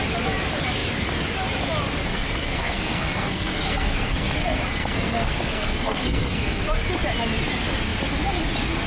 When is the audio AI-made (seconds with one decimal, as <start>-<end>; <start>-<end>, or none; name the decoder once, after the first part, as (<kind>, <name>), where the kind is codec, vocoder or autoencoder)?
2.1-6.6 (codec, SNAC)